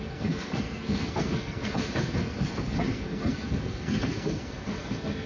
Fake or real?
fake